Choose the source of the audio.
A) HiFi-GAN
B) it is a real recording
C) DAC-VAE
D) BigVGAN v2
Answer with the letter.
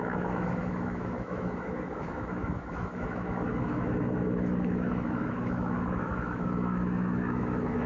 C